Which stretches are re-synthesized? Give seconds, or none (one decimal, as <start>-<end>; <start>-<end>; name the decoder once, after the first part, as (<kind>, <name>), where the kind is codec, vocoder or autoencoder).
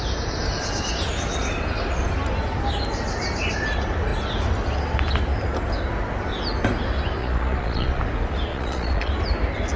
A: 7.2-8.0 (vocoder, Vocos); 8.5-9.1